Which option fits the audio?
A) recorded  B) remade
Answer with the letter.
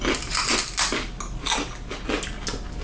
A